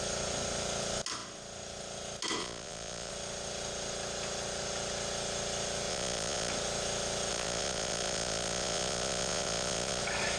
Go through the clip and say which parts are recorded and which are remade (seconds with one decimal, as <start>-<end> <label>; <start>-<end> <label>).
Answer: 0.0-2.4 recorded; 2.4-3.1 remade; 3.1-5.9 recorded; 5.9-6.5 remade; 6.5-7.3 recorded; 7.3-10.0 remade; 10.0-10.4 recorded